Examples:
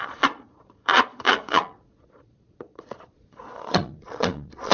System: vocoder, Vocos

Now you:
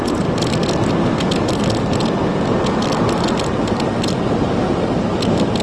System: none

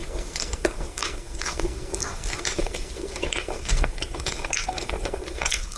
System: codec, SNAC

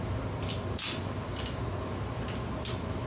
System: none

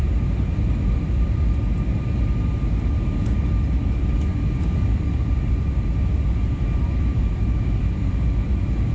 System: none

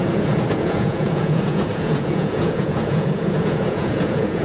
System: vocoder, Vocos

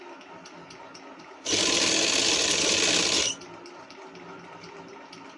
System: none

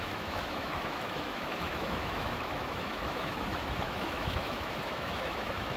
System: autoencoder, DAC-VAE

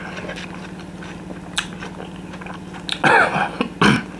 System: none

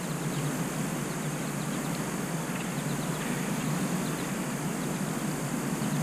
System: none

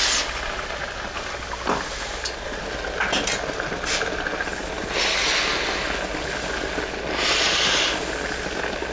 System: none